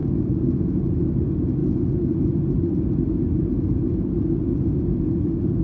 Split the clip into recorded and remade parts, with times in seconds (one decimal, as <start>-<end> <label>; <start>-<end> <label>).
0.0-5.6 recorded